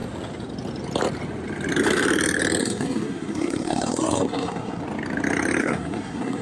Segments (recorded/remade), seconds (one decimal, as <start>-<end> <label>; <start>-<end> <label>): 0.0-2.6 recorded; 2.6-4.8 remade; 4.8-5.6 recorded; 5.6-6.4 remade